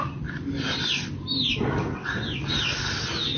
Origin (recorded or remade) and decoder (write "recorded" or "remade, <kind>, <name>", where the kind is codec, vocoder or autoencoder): remade, vocoder, BigVGAN v2